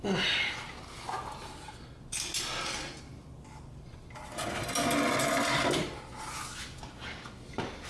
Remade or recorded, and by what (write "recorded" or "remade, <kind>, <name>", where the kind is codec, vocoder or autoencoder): recorded